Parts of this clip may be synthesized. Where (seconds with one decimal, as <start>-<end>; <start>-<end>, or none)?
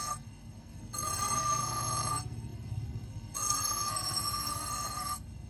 0.0-1.6; 2.1-5.5